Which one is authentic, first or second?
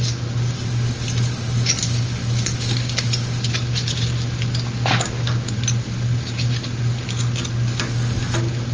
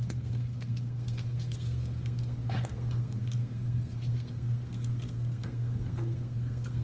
first